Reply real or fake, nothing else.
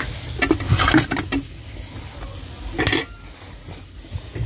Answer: real